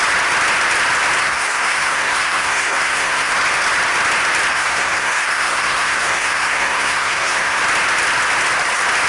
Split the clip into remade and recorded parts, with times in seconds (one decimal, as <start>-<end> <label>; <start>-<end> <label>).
0.0-1.2 recorded; 1.2-3.3 remade; 3.3-4.5 recorded; 4.5-7.6 remade; 7.6-9.1 recorded